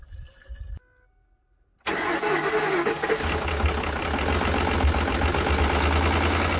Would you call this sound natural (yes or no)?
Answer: yes